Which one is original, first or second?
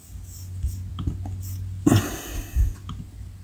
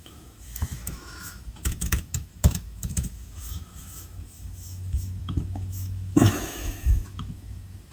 first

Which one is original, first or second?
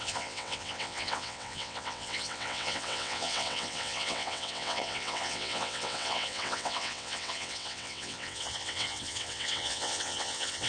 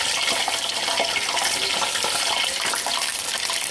second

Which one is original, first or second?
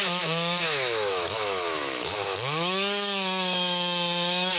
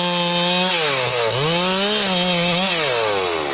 second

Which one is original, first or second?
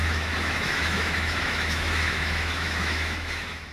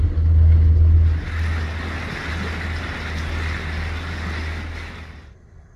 second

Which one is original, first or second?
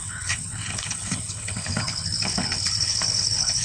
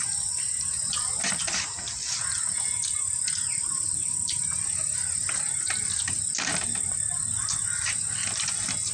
second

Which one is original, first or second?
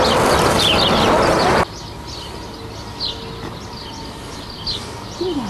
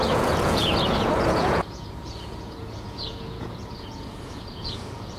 first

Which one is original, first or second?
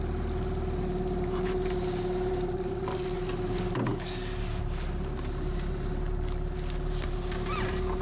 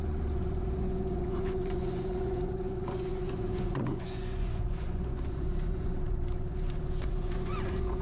first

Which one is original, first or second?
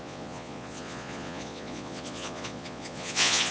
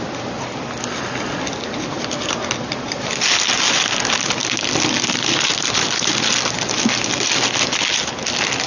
second